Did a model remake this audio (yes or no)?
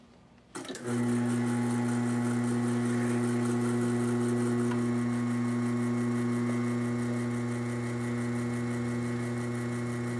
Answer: no